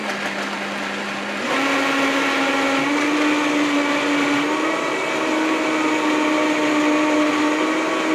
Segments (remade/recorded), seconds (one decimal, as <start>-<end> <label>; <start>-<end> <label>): 0.0-8.1 recorded